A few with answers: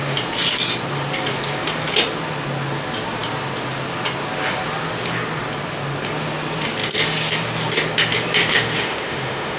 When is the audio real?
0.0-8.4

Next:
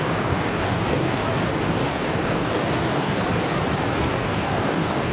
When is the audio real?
1.2-1.7; 3.2-4.0